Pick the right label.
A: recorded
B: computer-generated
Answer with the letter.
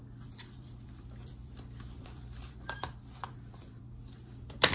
B